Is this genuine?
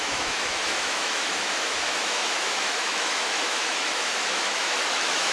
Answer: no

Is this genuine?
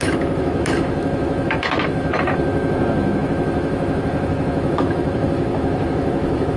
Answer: no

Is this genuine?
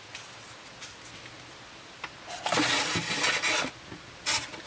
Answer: yes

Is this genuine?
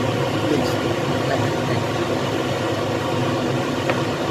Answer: yes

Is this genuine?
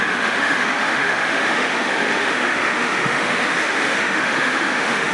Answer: no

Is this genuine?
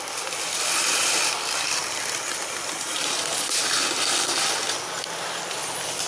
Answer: yes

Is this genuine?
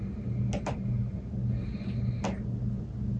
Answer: yes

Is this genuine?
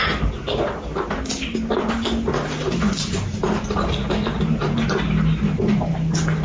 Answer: yes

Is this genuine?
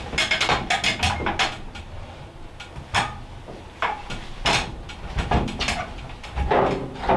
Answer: yes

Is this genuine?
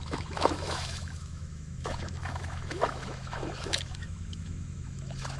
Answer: no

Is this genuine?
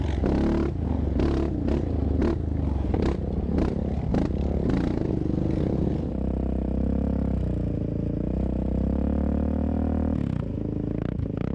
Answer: yes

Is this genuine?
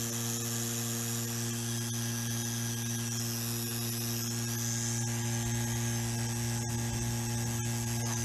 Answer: yes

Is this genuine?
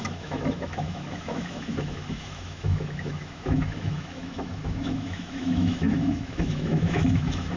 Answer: no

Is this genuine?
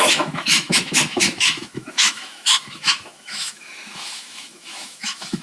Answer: no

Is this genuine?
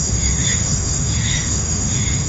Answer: no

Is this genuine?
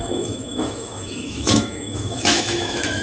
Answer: no